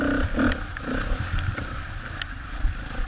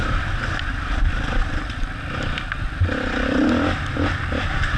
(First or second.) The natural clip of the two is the second